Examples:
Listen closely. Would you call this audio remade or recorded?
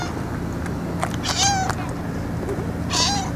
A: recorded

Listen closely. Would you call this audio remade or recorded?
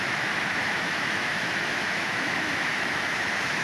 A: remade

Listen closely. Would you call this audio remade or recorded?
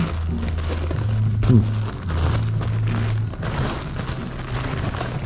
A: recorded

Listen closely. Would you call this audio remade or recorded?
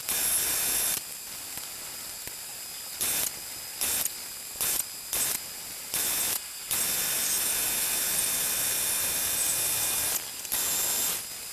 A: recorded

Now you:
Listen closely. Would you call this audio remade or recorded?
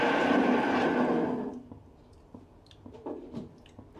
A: recorded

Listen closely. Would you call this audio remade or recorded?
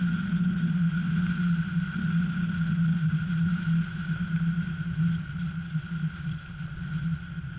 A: recorded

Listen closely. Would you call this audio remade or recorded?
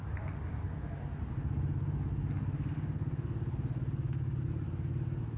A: recorded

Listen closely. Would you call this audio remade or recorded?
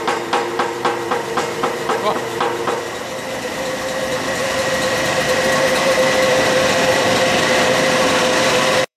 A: remade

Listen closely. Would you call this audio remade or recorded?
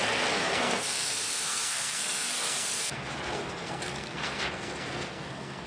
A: remade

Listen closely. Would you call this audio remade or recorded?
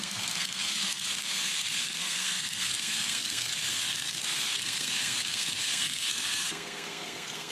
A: remade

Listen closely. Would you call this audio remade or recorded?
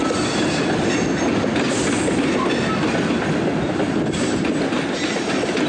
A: recorded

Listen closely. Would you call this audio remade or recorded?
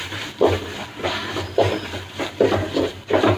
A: remade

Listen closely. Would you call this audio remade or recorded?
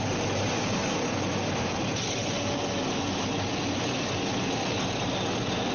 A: recorded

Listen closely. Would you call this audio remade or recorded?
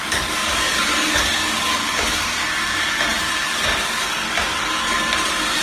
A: remade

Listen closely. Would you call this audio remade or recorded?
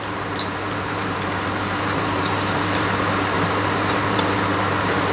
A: remade